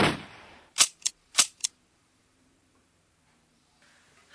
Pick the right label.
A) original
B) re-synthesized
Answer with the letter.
B